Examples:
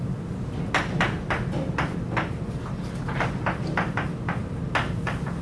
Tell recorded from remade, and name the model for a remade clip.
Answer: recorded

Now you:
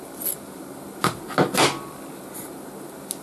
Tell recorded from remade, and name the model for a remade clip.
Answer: recorded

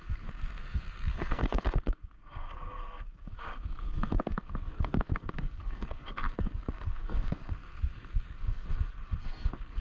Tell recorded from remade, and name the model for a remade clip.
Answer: remade, codec, SNAC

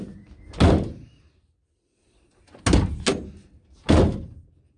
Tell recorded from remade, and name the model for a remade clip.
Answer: recorded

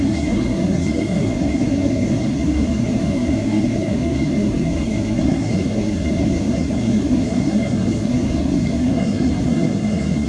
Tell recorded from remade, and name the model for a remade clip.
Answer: remade, codec, SNAC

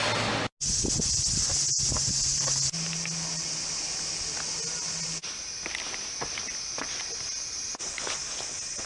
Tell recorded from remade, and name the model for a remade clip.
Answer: recorded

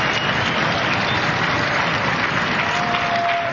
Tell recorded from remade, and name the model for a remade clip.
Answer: recorded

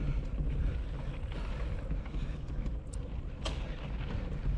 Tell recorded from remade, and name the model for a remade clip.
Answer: recorded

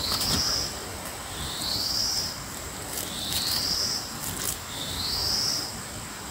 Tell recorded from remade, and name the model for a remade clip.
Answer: recorded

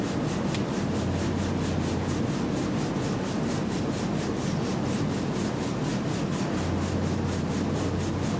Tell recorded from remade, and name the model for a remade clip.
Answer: recorded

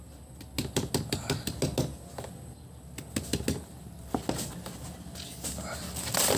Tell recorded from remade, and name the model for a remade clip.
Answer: recorded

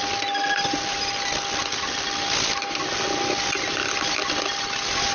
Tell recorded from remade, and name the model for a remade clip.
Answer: recorded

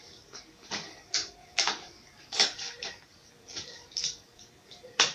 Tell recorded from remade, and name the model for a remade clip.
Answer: remade, codec, DAC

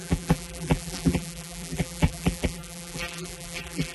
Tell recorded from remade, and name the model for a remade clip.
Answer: remade, vocoder, BigVGAN v2